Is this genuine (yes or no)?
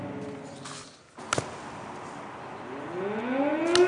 yes